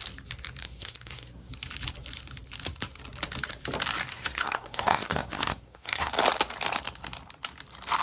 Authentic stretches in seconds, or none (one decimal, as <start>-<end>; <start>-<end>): 0.0-0.6; 1.5-4.1; 6.1-8.0